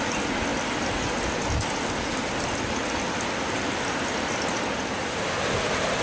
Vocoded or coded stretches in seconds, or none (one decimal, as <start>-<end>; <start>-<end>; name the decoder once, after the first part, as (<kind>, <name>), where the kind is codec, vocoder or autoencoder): none